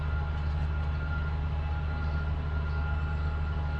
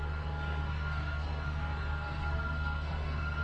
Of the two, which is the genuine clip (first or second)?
first